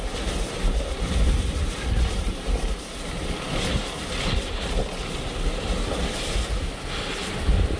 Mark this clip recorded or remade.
recorded